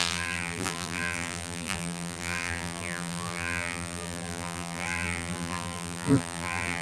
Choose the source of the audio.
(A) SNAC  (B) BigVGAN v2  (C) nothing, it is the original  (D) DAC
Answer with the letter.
B